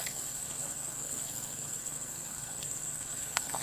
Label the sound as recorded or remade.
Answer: remade